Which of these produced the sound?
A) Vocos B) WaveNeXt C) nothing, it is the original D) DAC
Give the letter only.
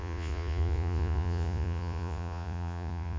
A